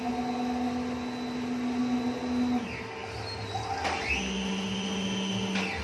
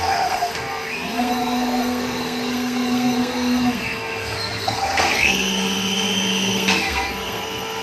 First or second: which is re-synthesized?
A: second